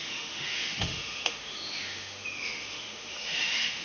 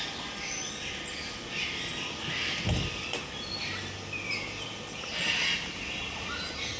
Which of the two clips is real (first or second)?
second